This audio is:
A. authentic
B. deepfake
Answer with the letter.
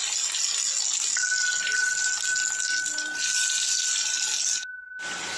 A